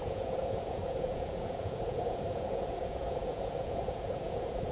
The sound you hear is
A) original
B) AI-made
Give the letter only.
B